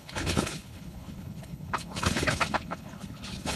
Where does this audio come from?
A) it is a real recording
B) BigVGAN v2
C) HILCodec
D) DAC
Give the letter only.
C